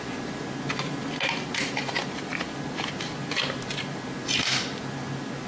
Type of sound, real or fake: real